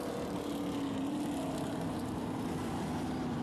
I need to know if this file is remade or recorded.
recorded